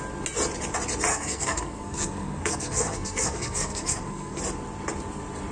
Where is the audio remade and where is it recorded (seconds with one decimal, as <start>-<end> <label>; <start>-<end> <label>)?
0.0-1.1 recorded; 1.1-4.4 remade; 4.4-5.5 recorded